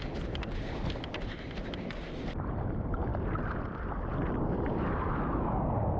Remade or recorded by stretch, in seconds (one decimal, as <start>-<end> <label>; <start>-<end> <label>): 0.0-6.0 recorded